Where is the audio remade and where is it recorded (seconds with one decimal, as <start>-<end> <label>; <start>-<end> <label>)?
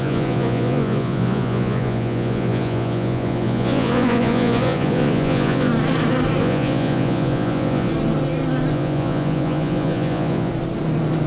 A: 0.0-5.7 remade; 5.7-6.4 recorded; 6.4-7.9 remade; 7.9-8.7 recorded; 8.7-10.5 remade; 10.5-11.3 recorded